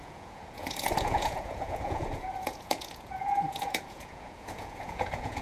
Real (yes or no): no